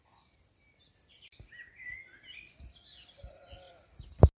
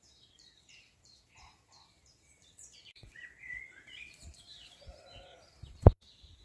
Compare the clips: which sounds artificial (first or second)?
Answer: second